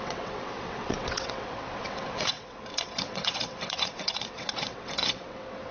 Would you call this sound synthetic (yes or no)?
yes